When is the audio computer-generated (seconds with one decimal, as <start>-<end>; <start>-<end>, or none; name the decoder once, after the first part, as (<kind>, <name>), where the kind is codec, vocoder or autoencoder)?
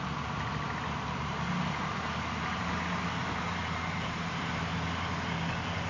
3.2-4.5 (vocoder, BigVGAN v2)